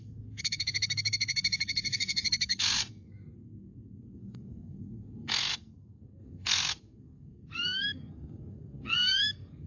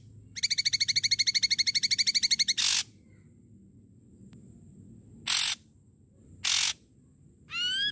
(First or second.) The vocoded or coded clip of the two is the first